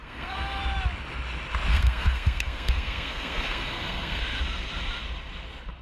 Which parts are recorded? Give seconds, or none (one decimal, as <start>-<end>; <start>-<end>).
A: 0.6-1.7; 4.2-5.8